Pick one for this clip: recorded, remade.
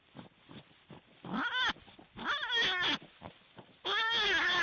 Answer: recorded